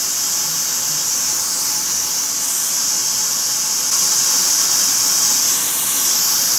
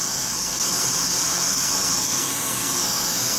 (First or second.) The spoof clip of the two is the second